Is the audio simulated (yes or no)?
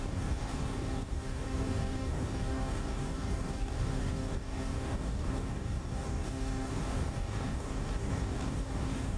yes